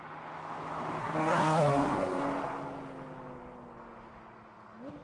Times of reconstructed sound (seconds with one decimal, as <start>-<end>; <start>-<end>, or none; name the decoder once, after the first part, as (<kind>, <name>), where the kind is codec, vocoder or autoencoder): 1.0-2.2 (codec, SNAC)